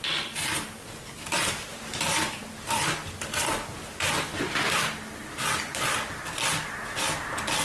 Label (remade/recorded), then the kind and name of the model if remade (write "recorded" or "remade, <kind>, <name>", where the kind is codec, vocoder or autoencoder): recorded